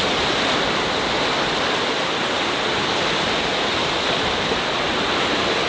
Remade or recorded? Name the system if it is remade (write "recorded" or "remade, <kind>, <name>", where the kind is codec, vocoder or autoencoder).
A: recorded